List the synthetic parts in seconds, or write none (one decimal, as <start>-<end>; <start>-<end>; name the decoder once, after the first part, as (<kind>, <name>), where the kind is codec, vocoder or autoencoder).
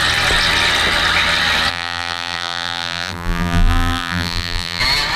1.7-4.8 (vocoder, BigVGAN v2)